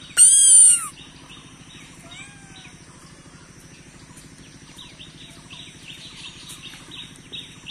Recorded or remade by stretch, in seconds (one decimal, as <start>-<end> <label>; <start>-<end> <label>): 0.0-7.7 recorded

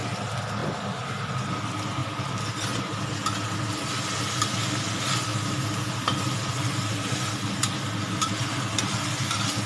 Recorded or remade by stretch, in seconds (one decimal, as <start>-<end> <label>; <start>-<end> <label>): 0.0-9.7 recorded

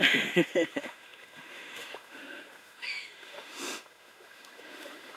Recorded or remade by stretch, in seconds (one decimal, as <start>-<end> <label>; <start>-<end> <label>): 0.0-5.2 remade

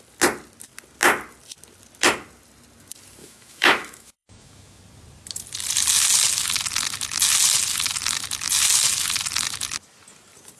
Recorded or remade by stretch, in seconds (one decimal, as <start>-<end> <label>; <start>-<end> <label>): 0.0-3.2 recorded; 3.2-4.8 remade; 4.8-10.6 recorded

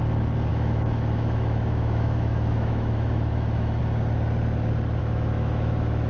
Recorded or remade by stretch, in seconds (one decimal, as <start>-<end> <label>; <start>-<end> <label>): 0.0-0.5 recorded; 0.5-3.8 remade; 3.8-5.0 recorded; 5.0-6.1 remade